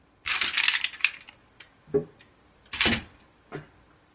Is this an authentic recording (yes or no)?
no